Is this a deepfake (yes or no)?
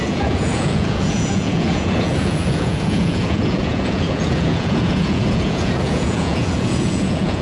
yes